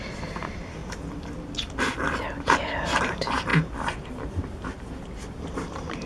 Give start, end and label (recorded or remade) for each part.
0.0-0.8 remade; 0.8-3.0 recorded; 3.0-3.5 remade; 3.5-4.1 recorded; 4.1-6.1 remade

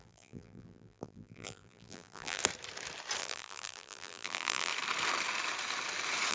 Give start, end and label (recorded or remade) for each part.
0.0-2.4 remade; 2.4-3.2 recorded; 3.2-4.7 remade; 4.7-6.3 recorded